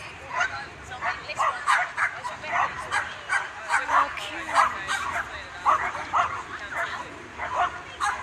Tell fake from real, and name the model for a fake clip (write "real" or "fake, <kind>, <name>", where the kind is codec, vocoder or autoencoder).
real